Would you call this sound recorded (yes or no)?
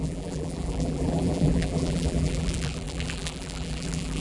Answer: no